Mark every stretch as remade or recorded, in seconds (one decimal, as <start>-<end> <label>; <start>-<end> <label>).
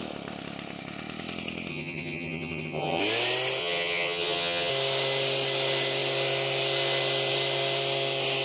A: 0.0-1.7 recorded; 1.7-3.0 remade; 3.0-3.6 recorded; 3.6-4.7 remade; 4.7-8.4 recorded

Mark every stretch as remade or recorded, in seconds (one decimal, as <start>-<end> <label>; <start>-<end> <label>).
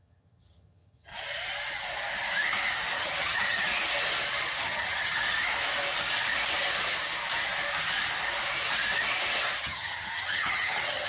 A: 0.0-1.1 remade; 1.1-2.9 recorded; 2.9-3.7 remade; 3.7-4.6 recorded; 4.6-5.2 remade; 5.2-9.6 recorded; 9.6-11.1 remade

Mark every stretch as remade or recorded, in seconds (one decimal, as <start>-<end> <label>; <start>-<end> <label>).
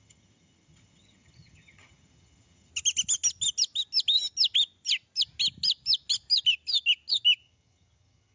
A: 0.0-2.7 remade; 2.7-7.4 recorded; 7.4-8.3 remade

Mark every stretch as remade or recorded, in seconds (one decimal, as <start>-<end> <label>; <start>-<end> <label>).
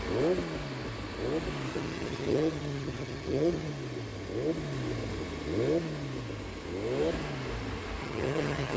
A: 0.0-1.7 recorded; 1.7-3.7 remade; 3.7-8.0 recorded; 8.0-8.8 remade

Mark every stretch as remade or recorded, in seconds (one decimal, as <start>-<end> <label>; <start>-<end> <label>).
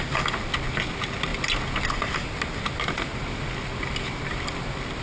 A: 0.0-5.0 recorded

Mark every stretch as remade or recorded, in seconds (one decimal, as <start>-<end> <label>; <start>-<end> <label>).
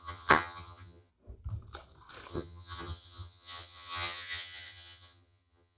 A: 0.0-1.1 remade; 1.1-2.3 recorded; 2.3-5.8 remade